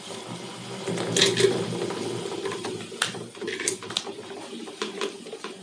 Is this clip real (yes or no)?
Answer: yes